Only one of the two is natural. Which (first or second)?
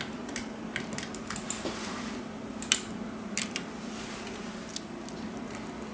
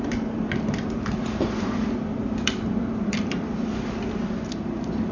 first